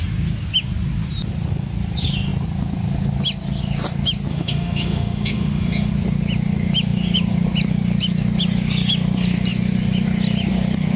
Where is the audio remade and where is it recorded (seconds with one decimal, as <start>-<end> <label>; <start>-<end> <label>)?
0.0-4.3 recorded; 4.3-5.9 remade; 5.9-11.0 recorded